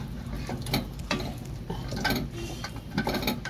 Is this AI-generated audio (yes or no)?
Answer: yes